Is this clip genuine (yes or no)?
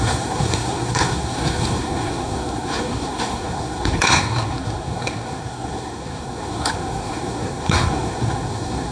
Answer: no